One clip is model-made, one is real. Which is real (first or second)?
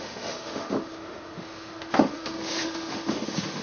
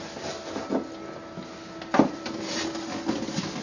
second